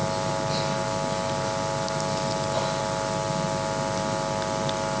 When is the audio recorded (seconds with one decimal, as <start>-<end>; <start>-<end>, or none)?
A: 0.0-5.0